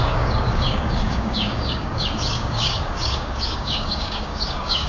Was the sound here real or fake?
fake